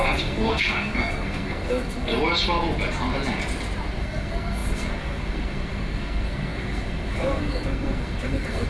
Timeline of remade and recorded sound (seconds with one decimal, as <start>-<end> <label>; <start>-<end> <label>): 0.0-2.1 remade; 2.1-4.0 recorded; 4.0-8.7 remade